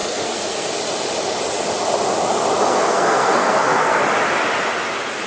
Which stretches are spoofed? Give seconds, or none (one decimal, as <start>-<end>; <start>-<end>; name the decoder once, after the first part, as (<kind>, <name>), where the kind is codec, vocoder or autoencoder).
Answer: 0.0-0.7 (codec, SNAC); 2.6-4.0